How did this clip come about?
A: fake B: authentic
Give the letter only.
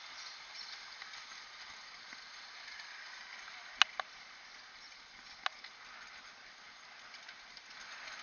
B